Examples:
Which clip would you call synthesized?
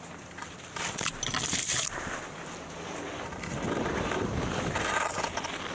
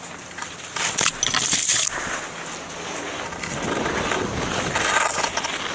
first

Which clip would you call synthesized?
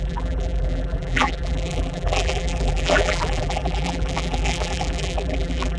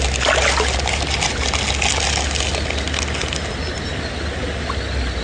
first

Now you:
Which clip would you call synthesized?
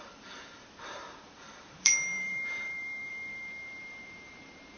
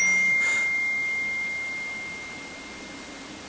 first